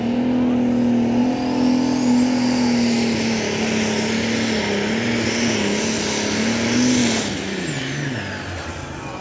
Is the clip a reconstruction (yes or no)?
no